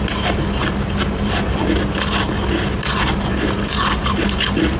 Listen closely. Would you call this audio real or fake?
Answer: real